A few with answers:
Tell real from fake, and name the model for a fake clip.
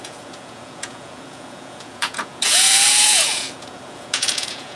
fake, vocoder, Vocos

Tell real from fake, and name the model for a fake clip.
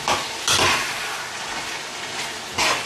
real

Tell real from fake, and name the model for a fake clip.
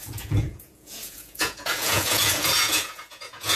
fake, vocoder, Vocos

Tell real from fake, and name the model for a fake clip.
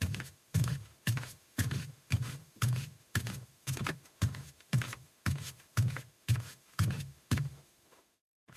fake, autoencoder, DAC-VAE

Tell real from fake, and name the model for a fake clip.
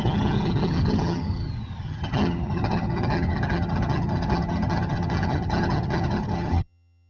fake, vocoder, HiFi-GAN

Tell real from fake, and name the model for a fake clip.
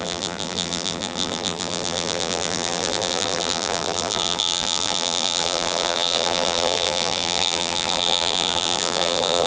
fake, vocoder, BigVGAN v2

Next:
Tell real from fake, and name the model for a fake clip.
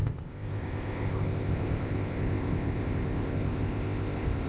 fake, codec, ZipCodec